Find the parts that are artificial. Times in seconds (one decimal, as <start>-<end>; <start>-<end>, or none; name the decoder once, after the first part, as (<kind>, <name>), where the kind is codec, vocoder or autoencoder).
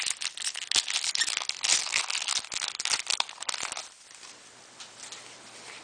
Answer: none